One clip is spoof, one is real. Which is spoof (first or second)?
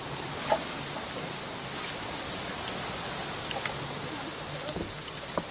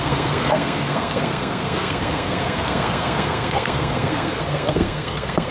second